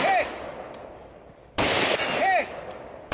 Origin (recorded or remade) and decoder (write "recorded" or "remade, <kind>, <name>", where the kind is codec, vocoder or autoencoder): recorded